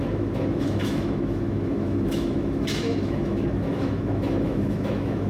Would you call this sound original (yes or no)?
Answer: no